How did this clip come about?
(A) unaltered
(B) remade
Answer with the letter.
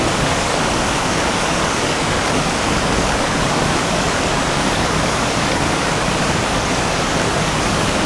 B